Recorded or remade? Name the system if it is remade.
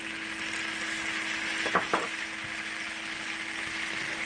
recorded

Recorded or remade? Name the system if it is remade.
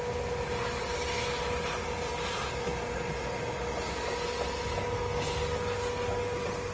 recorded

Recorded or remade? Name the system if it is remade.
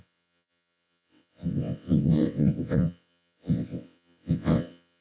remade, vocoder, WaveNeXt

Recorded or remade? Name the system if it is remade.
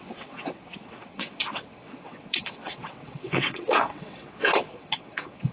remade, vocoder, WaveNeXt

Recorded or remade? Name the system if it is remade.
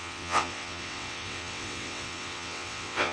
remade, vocoder, WaveNeXt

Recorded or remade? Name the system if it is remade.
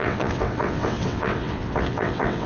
remade, vocoder, WaveNeXt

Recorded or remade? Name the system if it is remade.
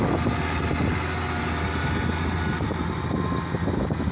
recorded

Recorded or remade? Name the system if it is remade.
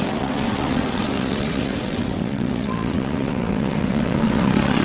remade, vocoder, WaveNeXt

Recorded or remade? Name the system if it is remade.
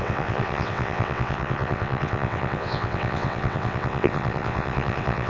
remade, vocoder, WaveNeXt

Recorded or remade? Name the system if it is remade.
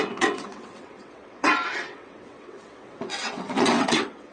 remade, vocoder, WaveNeXt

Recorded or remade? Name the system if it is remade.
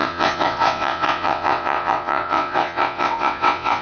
remade, vocoder, WaveNeXt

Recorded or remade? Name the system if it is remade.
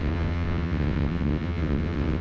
remade, vocoder, WaveNeXt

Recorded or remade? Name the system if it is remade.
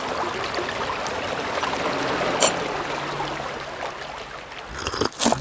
recorded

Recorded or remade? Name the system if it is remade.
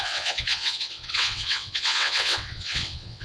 remade, vocoder, WaveNeXt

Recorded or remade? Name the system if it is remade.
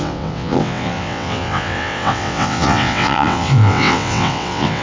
remade, vocoder, WaveNeXt